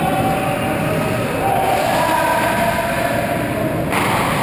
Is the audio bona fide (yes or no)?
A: yes